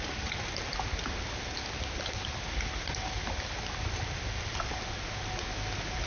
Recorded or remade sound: recorded